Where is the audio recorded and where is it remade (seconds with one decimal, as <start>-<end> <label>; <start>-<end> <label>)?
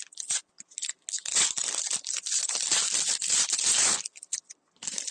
0.0-5.1 recorded